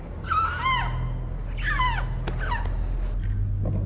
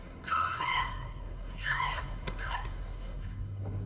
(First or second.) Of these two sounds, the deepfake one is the second